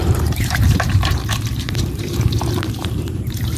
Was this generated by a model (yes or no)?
yes